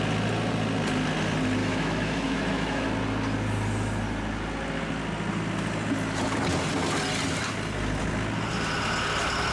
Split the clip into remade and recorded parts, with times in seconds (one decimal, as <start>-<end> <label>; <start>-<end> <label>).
0.0-1.6 recorded; 1.6-2.9 remade; 2.9-9.5 recorded